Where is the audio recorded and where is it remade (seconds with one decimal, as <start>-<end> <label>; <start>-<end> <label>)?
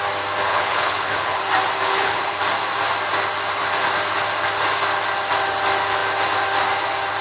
0.0-0.5 recorded; 0.5-1.4 remade; 1.4-1.9 recorded; 1.9-2.4 remade; 2.4-7.2 recorded